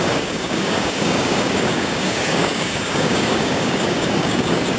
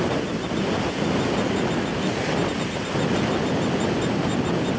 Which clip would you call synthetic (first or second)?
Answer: first